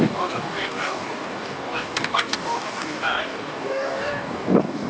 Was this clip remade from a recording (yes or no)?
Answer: yes